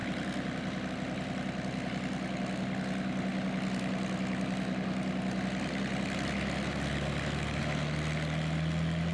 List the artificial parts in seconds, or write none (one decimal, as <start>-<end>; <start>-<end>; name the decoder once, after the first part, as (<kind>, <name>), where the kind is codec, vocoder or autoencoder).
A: none